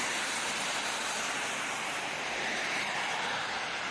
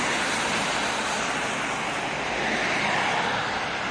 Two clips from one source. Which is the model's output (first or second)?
first